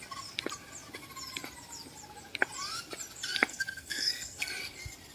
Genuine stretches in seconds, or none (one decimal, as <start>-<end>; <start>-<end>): 0.0-3.5; 4.5-5.1